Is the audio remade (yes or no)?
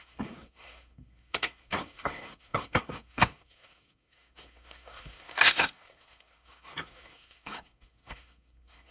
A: yes